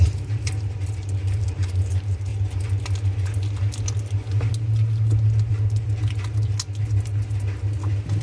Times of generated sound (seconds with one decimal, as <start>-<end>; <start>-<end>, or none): 0.0-2.3; 5.5-5.9